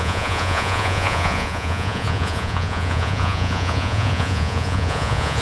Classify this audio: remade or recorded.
remade